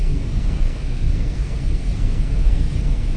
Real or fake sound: fake